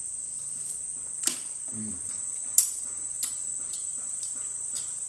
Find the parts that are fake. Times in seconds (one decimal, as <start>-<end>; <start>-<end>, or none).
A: 3.9-5.1